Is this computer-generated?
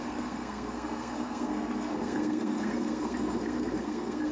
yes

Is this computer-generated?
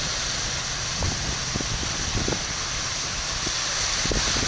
yes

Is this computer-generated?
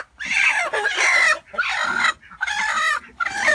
no